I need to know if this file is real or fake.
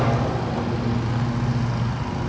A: real